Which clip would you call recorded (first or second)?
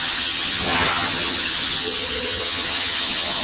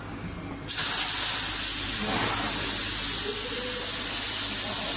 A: second